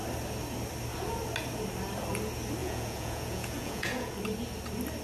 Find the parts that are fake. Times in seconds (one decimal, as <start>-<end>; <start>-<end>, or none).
2.6-4.1